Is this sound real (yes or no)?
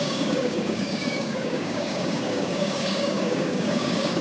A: no